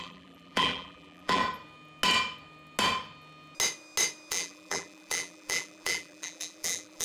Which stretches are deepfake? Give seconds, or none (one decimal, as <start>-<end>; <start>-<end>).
0.0-1.4; 4.3-7.0